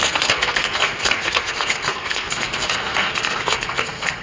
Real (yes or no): no